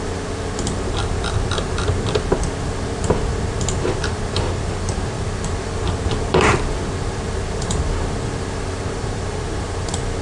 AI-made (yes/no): yes